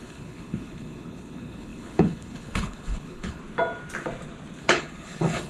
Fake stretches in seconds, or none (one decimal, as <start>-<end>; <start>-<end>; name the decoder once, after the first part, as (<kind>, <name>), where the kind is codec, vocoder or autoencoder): 0.0-3.4 (codec, HILCodec); 4.6-5.5